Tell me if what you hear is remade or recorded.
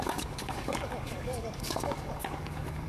remade